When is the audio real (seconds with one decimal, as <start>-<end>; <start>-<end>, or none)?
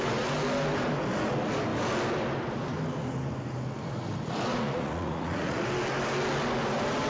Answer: 0.0-4.5; 5.6-7.1